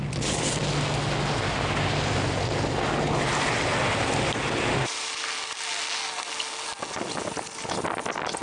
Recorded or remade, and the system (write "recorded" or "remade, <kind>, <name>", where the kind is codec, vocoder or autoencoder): recorded